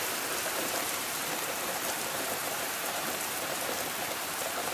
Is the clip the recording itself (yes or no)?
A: no